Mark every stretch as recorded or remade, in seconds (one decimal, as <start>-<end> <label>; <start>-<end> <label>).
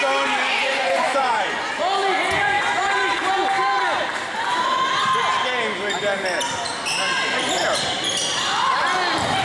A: 0.0-0.5 recorded; 0.5-1.7 remade; 1.7-2.1 recorded; 2.1-2.9 remade; 2.9-9.4 recorded